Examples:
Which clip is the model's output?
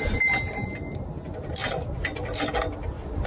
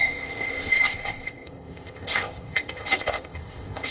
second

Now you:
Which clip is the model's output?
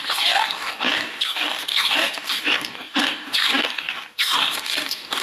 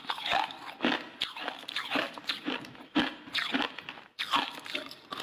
first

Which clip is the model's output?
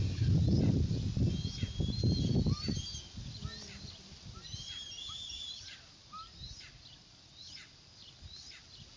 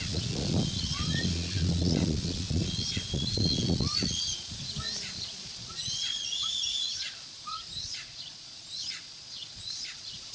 second